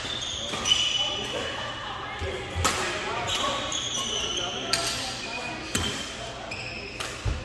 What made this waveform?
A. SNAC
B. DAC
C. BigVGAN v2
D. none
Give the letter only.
D